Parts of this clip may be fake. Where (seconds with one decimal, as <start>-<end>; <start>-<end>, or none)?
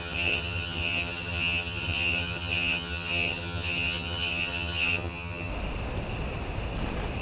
0.0-5.5